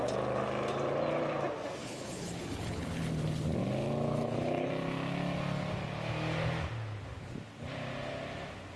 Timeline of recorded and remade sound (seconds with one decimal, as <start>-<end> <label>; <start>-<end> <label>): 0.0-1.8 recorded; 1.8-3.0 remade; 3.0-4.1 recorded; 4.1-4.7 remade; 4.7-8.8 recorded